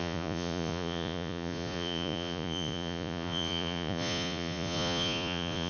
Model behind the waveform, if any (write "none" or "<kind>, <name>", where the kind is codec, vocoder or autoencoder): vocoder, Vocos